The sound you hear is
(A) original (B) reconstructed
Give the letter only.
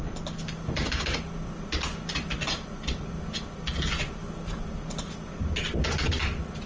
A